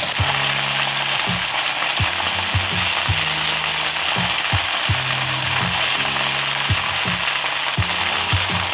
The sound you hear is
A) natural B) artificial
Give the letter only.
A